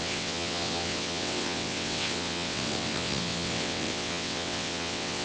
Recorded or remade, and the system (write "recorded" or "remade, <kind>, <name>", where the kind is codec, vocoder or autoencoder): remade, vocoder, WaveNeXt